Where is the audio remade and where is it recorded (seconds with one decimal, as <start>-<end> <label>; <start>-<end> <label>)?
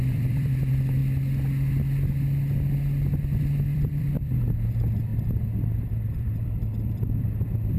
0.0-1.0 remade; 1.0-3.4 recorded; 3.4-7.8 remade